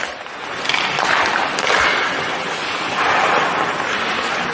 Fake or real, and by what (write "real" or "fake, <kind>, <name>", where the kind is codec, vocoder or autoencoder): real